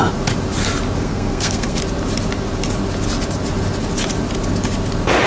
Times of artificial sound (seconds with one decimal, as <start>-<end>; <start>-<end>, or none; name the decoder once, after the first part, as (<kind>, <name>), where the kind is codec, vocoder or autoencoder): 1.0-1.8 (codec, SNAC)